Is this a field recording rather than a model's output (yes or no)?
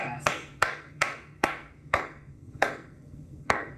no